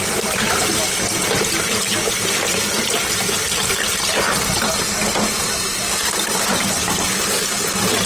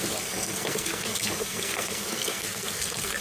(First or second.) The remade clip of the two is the second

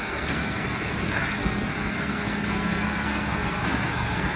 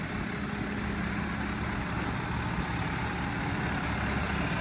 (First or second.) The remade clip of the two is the first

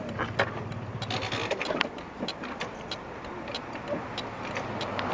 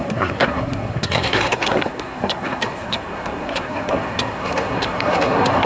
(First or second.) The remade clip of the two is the second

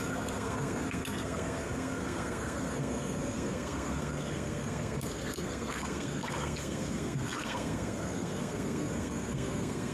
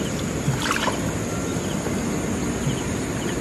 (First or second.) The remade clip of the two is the first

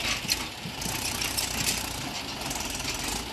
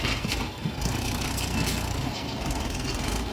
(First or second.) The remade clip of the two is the second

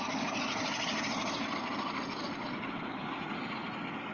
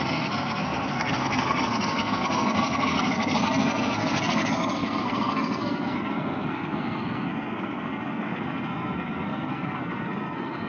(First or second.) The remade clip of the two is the second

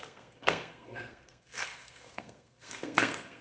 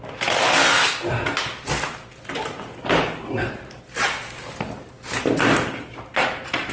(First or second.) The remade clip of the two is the first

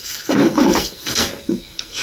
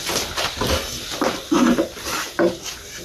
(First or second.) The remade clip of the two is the first